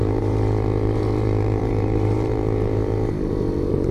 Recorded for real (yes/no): no